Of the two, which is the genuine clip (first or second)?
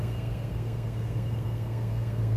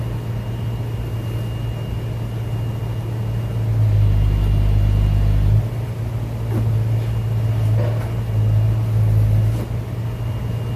second